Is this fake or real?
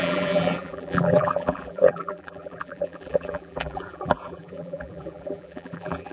fake